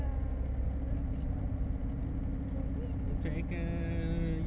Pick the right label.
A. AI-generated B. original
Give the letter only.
B